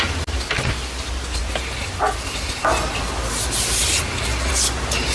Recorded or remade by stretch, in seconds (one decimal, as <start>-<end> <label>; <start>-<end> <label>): 0.0-5.1 recorded